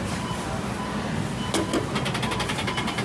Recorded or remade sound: recorded